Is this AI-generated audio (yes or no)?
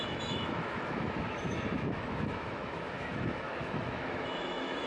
yes